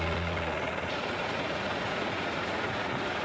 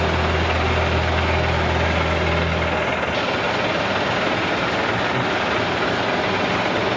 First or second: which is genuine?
second